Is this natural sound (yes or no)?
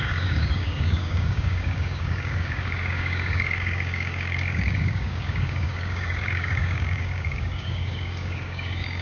no